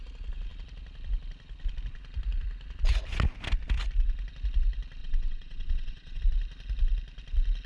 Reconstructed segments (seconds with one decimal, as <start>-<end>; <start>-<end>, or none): 5.0-6.2